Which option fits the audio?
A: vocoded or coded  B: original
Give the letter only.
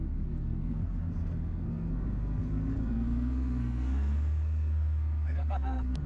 A